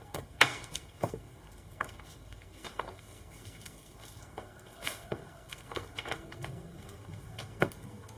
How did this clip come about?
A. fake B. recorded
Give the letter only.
A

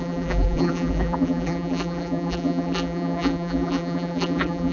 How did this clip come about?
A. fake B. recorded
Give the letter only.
A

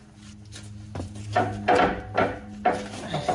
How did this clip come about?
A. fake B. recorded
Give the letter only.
B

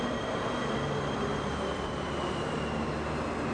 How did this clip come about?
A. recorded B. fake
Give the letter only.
A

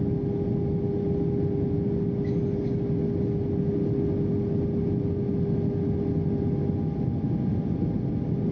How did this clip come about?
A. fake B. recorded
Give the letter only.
B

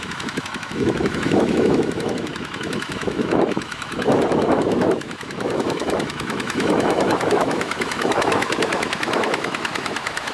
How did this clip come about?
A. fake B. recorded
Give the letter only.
A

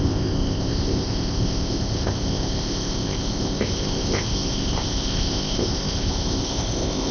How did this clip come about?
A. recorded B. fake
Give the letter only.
B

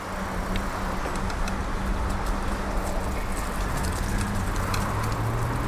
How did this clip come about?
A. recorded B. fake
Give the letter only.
A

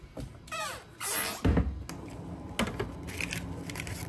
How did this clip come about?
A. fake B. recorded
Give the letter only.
B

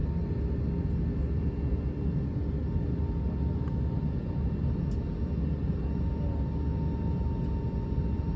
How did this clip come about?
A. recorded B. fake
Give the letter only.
A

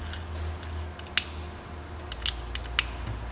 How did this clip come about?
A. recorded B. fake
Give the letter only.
A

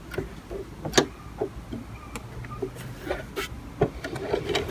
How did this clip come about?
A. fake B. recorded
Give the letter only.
B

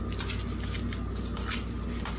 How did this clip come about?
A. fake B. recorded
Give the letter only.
B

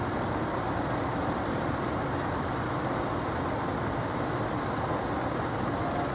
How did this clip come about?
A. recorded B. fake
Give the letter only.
A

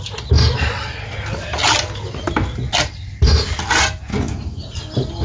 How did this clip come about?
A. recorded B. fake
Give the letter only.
A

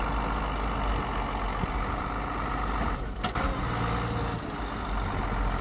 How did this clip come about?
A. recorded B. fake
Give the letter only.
A